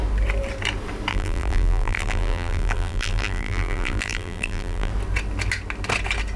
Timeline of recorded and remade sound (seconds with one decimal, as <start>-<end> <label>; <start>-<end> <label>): 0.0-1.1 recorded; 1.1-4.9 remade; 4.9-6.4 recorded